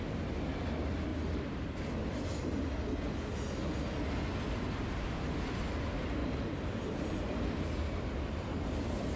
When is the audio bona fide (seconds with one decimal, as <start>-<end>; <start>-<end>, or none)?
0.0-1.1; 1.7-6.2